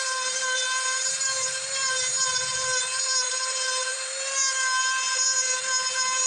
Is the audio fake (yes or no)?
yes